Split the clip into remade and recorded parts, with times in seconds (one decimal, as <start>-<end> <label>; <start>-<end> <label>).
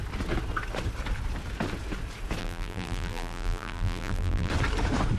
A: 0.0-2.4 recorded; 2.4-4.5 remade; 4.5-5.2 recorded